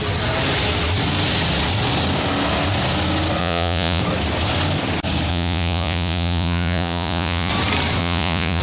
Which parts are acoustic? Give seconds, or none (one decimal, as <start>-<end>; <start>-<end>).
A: 0.0-3.4; 4.0-5.3; 7.5-8.0